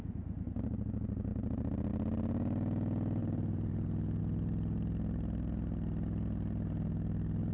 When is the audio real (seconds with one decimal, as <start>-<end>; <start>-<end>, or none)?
0.0-3.2; 4.2-7.5